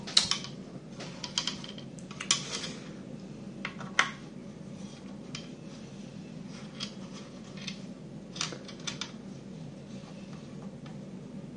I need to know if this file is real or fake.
real